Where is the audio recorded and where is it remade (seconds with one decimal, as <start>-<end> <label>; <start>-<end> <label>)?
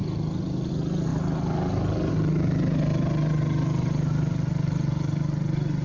0.0-5.8 recorded